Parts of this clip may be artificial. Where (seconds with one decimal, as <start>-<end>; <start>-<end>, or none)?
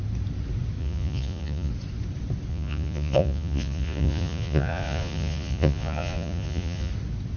0.8-1.7; 2.5-6.9